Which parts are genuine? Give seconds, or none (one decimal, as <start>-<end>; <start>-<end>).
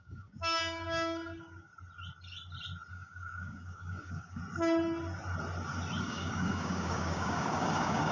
1.7-2.9; 4.4-6.0